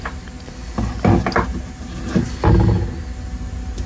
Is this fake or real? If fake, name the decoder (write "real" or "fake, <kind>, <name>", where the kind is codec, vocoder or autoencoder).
real